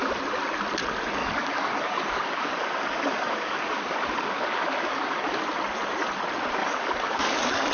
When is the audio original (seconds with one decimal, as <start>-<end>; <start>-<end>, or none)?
0.0-1.2; 5.4-6.6

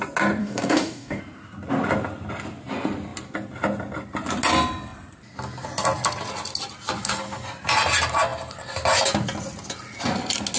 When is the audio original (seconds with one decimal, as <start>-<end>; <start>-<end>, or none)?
0.0-0.4; 1.2-10.6

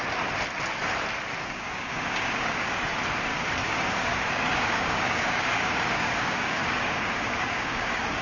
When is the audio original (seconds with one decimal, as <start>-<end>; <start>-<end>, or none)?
0.0-1.4; 2.7-3.3